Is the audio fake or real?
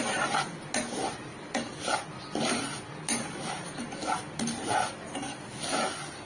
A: real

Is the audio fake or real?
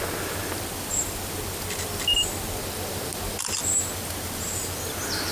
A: real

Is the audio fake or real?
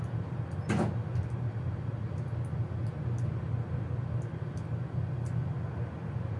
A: real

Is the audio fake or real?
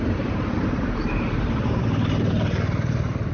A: fake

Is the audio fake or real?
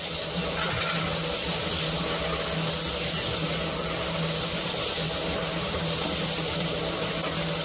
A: real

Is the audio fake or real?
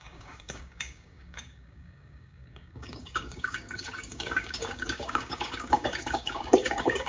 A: fake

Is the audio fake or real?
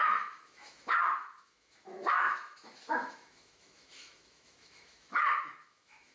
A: fake